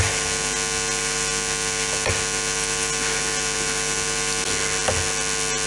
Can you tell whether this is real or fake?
real